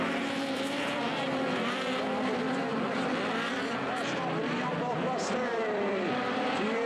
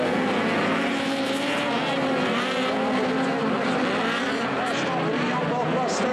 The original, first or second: second